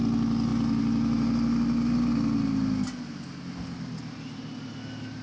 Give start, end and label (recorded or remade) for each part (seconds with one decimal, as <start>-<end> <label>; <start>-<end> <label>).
0.0-5.2 recorded